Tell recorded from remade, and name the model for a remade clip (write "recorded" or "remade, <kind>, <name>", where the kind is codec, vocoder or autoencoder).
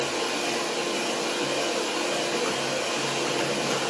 recorded